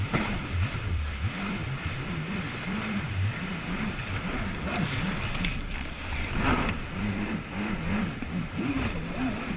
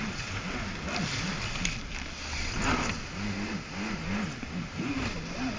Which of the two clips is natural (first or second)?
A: second